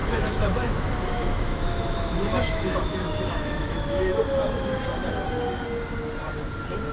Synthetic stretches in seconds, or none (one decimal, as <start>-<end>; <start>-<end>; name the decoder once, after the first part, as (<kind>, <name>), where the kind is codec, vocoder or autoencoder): 0.0-4.1 (autoencoder, DAC-VAE)